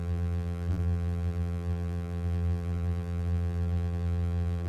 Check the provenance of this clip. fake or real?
fake